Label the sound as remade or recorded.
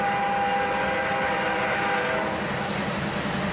recorded